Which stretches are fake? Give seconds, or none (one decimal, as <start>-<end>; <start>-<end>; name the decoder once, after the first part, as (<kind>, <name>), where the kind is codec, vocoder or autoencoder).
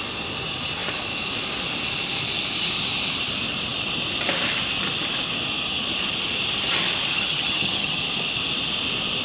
7.1-8.0 (vocoder, HiFi-GAN)